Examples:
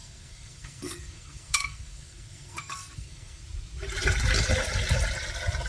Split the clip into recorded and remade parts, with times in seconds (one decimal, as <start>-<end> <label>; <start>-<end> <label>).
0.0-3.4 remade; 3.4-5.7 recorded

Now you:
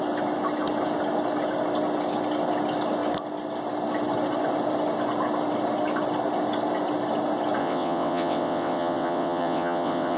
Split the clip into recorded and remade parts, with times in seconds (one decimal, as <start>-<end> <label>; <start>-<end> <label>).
0.0-7.6 recorded; 7.6-10.2 remade

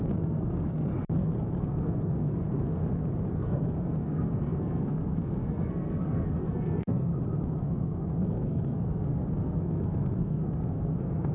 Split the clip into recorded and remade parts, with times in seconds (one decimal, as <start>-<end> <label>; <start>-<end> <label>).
0.0-0.9 remade; 0.9-1.6 recorded; 1.6-2.8 remade; 2.8-3.3 recorded; 3.3-7.1 remade; 7.1-7.6 recorded; 7.6-11.3 remade

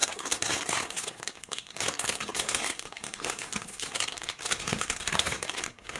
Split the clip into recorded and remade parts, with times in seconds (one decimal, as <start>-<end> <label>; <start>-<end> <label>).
0.0-6.0 remade